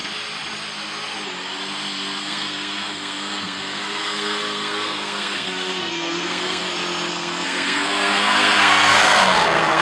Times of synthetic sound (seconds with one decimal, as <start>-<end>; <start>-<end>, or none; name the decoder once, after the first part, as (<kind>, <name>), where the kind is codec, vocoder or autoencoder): 2.2-6.6 (codec, SNAC); 7.1-9.8

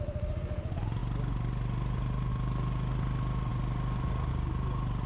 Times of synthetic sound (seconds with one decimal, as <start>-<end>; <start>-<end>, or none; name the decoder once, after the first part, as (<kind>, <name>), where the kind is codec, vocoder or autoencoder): none

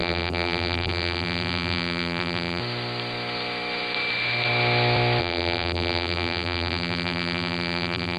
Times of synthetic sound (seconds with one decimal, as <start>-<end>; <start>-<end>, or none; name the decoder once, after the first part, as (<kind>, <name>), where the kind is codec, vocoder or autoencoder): 0.0-2.6 (vocoder, BigVGAN v2); 5.2-8.2

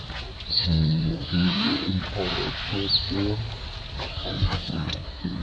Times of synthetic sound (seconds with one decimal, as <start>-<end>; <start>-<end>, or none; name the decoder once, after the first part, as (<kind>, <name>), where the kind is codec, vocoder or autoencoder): 0.5-2.0 (codec, SNAC); 4.1-5.4